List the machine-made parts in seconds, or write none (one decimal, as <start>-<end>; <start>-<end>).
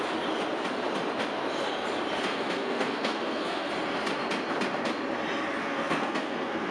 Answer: 2.3-3.7; 5.6-6.7